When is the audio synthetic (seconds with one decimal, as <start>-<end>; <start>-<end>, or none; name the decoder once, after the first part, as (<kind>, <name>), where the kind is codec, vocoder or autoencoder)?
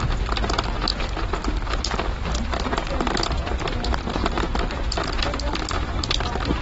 none